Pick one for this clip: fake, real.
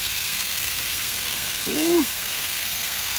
fake